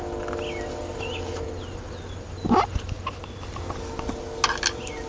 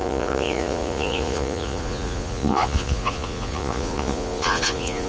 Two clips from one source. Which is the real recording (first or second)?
first